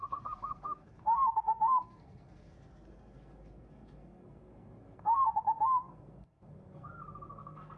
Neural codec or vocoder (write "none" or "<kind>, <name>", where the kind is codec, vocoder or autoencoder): codec, SNAC